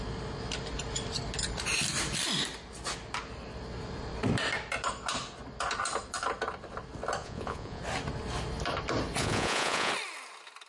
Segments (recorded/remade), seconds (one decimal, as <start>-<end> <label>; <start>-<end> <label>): 0.0-7.2 recorded; 7.2-7.8 remade; 7.8-9.2 recorded; 9.2-9.9 remade; 9.9-10.7 recorded